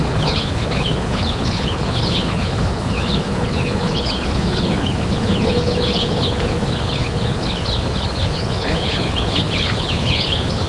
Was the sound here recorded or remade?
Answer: remade